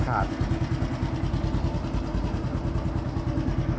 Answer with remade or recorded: recorded